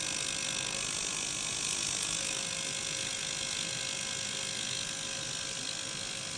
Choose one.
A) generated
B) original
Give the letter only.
B